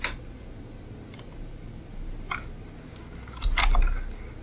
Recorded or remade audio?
recorded